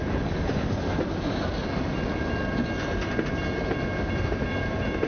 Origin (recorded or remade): recorded